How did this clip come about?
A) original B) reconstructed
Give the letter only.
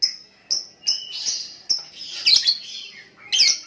A